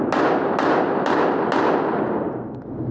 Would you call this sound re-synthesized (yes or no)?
no